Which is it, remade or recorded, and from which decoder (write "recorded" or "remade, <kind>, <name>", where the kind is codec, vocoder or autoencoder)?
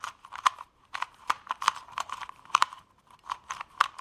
remade, vocoder, BigVGAN v2